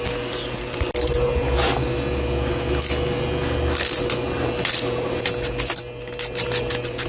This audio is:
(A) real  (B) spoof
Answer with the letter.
A